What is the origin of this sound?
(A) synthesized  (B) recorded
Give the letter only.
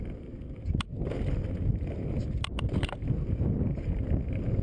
B